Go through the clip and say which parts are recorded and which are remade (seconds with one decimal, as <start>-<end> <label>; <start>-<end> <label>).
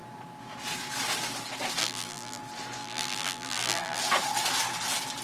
0.0-1.8 recorded; 1.8-2.4 remade; 2.4-2.8 recorded; 2.8-4.0 remade; 4.0-5.2 recorded